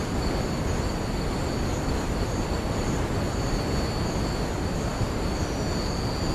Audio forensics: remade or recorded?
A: recorded